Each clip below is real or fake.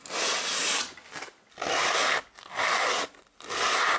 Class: real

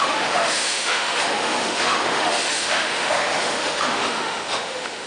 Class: fake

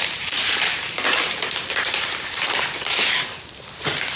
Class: fake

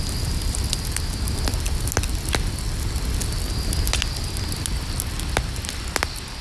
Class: real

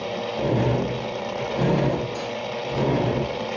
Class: real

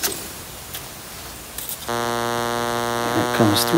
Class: real